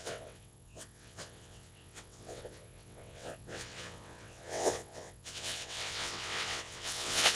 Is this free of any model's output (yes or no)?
no